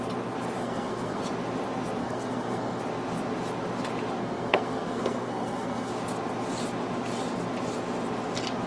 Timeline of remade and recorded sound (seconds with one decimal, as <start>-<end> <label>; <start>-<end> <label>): 0.0-0.6 recorded; 0.6-1.2 remade; 1.2-2.0 recorded; 2.0-2.8 remade; 2.8-4.2 recorded; 4.2-5.9 remade; 5.9-8.7 recorded